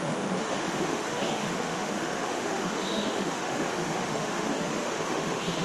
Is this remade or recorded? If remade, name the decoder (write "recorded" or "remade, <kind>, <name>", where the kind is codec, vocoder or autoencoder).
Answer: remade, autoencoder, DAC-VAE